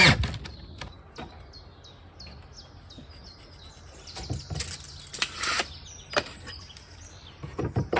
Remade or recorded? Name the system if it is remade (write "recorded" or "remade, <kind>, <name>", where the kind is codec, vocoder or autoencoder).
recorded